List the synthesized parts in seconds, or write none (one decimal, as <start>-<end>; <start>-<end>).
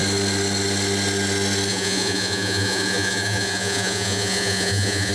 1.7-5.1